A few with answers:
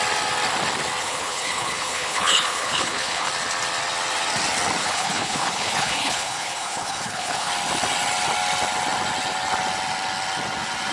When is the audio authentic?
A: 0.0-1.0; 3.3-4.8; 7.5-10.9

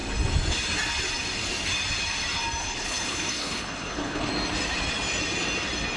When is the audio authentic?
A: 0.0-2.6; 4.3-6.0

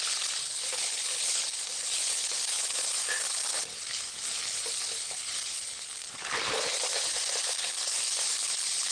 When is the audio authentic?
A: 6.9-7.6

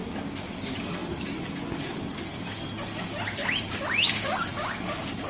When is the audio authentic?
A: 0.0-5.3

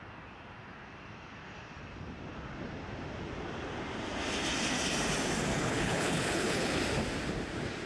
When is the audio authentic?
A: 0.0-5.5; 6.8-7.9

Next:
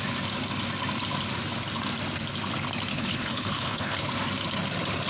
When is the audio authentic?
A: 0.0-2.9; 4.1-5.1